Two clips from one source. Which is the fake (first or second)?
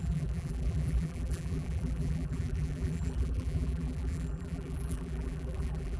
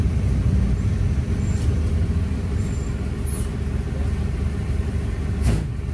first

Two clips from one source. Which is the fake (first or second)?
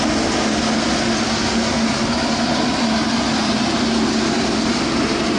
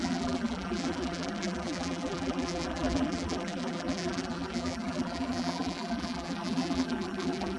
second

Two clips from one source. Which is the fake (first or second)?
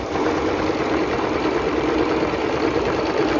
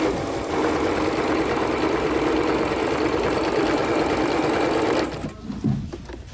first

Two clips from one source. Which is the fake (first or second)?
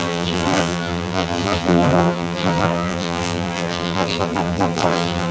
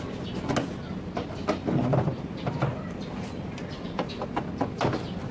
first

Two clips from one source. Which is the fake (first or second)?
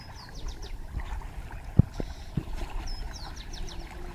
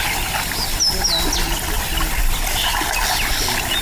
first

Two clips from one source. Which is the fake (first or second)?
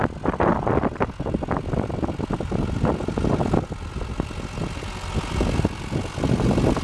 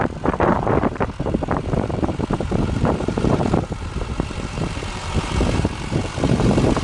second